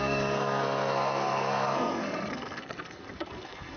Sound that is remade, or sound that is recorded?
remade